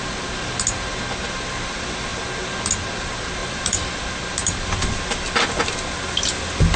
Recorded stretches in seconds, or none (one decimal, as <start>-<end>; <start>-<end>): 0.0-3.4; 4.0-6.8